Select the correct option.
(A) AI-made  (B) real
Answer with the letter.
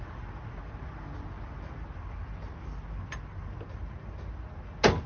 B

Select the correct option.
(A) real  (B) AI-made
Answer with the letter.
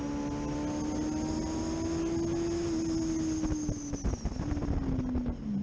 A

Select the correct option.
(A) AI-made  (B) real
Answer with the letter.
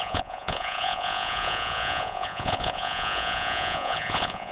A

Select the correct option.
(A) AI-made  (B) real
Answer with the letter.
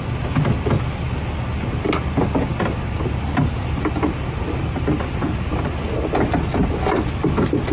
B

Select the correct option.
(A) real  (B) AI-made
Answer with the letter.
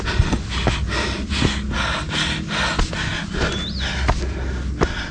A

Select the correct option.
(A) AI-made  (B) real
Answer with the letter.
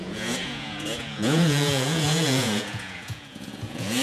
A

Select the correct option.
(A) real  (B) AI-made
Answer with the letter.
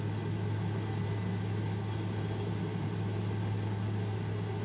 A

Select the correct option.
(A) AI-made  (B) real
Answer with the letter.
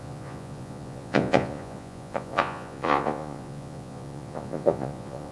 A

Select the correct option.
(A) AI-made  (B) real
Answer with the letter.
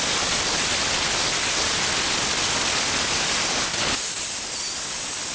B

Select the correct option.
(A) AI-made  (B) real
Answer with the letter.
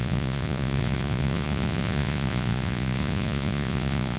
A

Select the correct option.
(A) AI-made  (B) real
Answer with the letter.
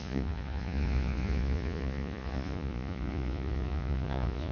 A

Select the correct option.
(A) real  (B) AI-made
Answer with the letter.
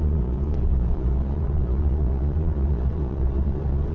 B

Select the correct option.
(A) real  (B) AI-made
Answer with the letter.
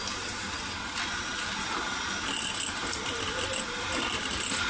A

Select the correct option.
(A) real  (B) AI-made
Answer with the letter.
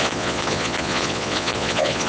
B